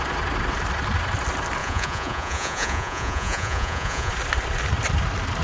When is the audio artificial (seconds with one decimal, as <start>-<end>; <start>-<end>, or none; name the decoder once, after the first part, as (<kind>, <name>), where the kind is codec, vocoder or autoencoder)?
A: 1.6-4.1 (vocoder, Vocos)